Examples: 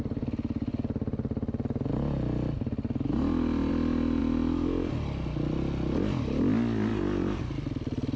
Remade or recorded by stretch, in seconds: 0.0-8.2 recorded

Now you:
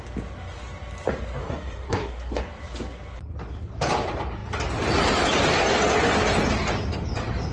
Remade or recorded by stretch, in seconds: 0.0-1.4 recorded; 1.4-2.4 remade; 2.4-7.5 recorded

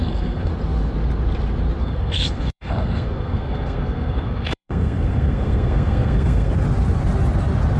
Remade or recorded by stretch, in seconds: 0.0-0.5 remade; 0.5-1.8 recorded; 1.8-6.5 remade; 6.5-7.8 recorded

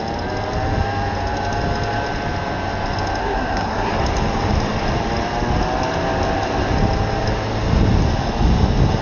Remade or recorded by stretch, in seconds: 0.0-3.2 recorded; 3.2-3.9 remade; 3.9-9.0 recorded

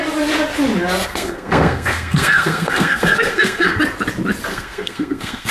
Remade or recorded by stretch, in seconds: 0.0-1.1 recorded; 1.1-3.8 remade; 3.8-4.5 recorded; 4.5-5.5 remade

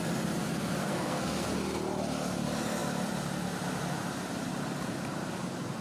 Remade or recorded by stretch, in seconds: 0.0-0.8 recorded; 0.8-1.5 remade; 1.5-5.8 recorded

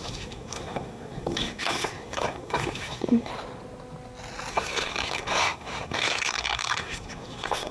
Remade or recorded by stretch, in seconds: 0.0-3.3 remade; 3.3-4.5 recorded; 4.5-7.7 remade

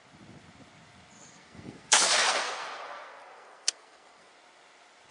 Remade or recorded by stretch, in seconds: 0.0-1.2 recorded; 1.2-4.3 remade; 4.3-5.1 recorded